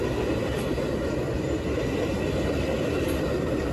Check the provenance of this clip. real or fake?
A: real